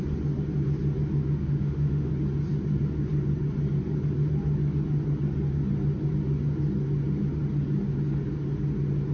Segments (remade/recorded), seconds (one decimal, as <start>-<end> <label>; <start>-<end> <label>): 0.0-1.4 recorded; 1.4-2.1 remade; 2.1-9.1 recorded